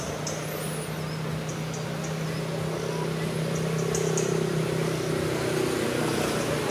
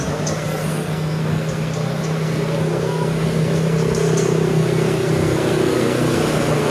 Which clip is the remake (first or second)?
second